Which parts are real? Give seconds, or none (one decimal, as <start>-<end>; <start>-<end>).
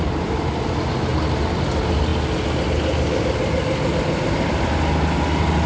0.0-5.7